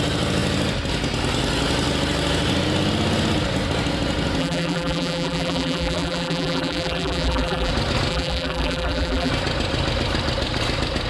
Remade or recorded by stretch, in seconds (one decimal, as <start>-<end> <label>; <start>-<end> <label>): 0.0-4.4 recorded; 4.4-7.7 remade; 7.7-8.1 recorded; 8.1-9.3 remade; 9.3-11.1 recorded